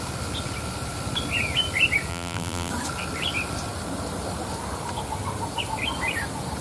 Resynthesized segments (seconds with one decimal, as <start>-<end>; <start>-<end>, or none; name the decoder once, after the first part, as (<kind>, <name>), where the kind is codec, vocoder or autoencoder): 2.1-2.7 (vocoder, BigVGAN v2)